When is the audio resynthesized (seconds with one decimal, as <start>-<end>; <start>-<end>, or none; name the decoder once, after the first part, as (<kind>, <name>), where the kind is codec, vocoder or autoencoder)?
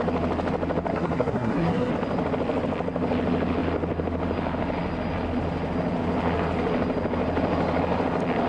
0.9-1.9 (codec, SNAC)